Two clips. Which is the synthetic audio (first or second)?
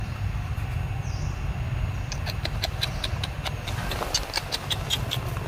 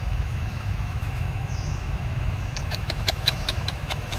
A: second